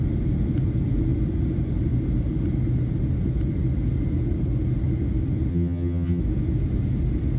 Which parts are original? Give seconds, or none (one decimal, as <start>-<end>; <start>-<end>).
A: 0.0-5.5; 6.2-7.4